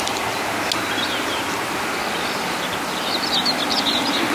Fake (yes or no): no